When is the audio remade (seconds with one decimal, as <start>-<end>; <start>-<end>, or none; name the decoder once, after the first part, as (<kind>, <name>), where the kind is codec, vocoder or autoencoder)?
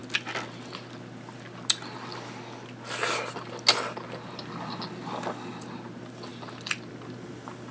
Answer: none